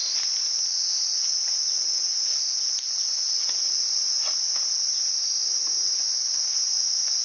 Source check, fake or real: real